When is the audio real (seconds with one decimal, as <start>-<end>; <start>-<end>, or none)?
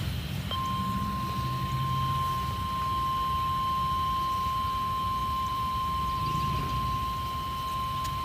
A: 0.0-5.2; 6.6-8.2